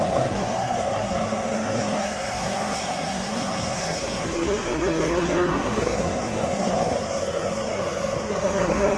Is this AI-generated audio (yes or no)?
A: yes